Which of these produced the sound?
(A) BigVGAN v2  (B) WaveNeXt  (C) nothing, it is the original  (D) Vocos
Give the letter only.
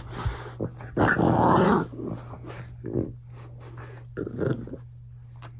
C